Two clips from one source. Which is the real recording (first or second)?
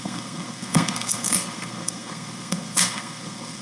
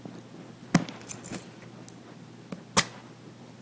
second